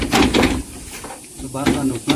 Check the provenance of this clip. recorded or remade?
remade